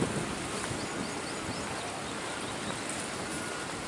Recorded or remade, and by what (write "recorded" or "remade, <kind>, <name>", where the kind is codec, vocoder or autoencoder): remade, vocoder, BigVGAN v2